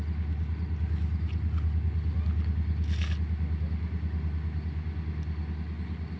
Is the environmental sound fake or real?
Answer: real